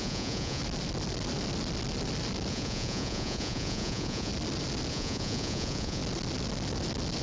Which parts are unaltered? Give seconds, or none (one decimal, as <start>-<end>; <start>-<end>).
0.6-2.5; 4.3-4.9; 6.0-7.2